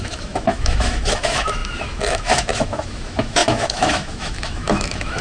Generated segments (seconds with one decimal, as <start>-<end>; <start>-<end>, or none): 0.0-5.2